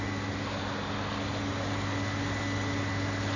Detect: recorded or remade recorded